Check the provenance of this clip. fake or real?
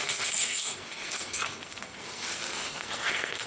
fake